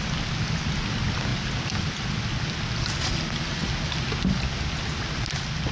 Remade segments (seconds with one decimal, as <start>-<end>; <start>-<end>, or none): none